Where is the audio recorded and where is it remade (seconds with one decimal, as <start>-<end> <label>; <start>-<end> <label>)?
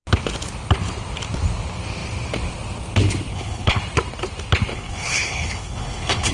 0.0-3.3 recorded; 3.3-3.8 remade; 3.8-4.7 recorded; 4.7-6.3 remade